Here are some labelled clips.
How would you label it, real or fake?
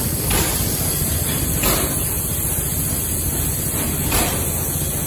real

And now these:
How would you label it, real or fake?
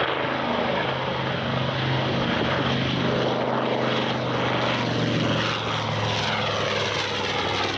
real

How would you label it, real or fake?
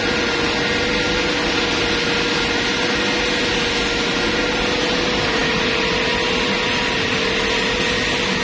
real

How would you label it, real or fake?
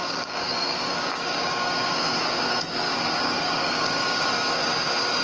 fake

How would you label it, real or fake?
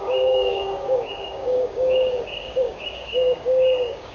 fake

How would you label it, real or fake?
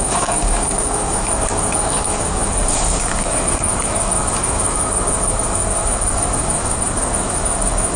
fake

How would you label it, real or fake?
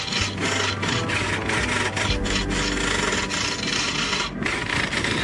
real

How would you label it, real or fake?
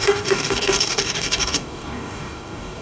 fake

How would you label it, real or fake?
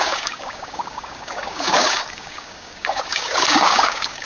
fake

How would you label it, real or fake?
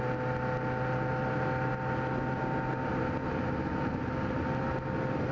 real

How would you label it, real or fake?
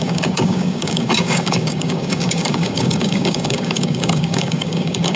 fake